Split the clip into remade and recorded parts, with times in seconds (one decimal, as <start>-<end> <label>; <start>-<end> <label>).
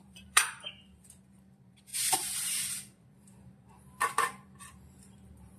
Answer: 0.0-5.6 remade